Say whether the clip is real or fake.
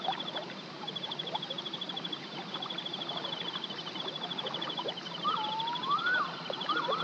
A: fake